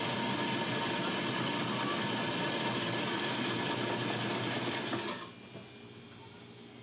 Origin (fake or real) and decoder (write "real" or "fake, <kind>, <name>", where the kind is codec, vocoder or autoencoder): real